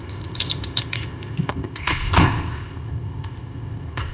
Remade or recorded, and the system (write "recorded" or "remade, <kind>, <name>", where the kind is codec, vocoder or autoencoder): remade, codec, ZipCodec